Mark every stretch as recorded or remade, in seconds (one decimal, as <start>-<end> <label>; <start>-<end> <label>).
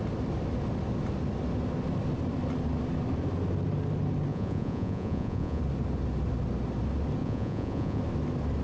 0.0-4.3 recorded; 4.3-5.6 remade; 5.6-7.2 recorded; 7.2-8.0 remade; 8.0-8.6 recorded